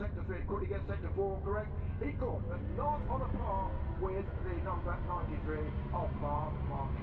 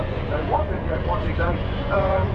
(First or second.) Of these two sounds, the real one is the first